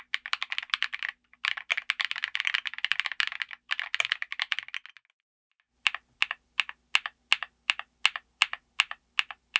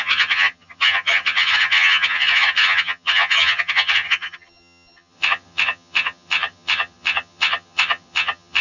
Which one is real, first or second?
first